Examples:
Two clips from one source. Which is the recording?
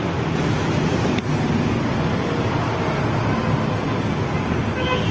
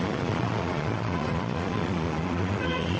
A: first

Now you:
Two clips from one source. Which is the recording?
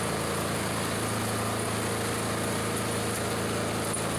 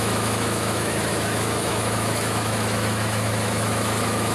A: first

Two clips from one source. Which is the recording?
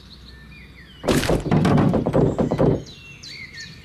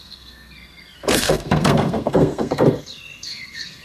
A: first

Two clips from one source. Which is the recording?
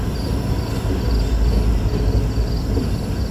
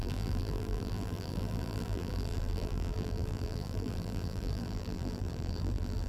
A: first